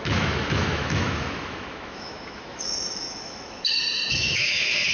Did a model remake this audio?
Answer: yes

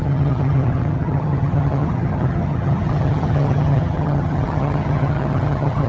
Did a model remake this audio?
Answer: yes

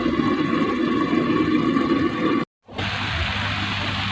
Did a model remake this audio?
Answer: no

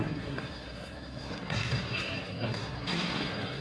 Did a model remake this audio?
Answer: yes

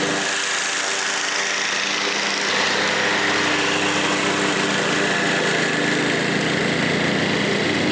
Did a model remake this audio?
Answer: no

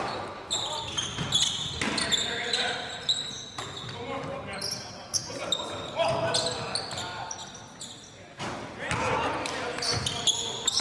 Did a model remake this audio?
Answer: no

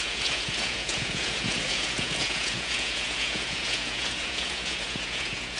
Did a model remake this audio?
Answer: yes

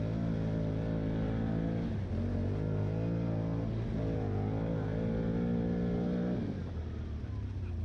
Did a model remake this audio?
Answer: no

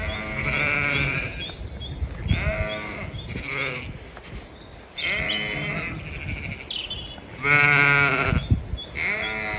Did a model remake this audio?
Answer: no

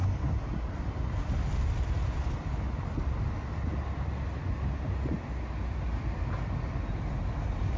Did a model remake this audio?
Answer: no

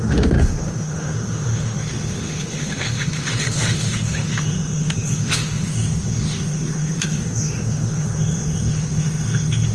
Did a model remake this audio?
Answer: yes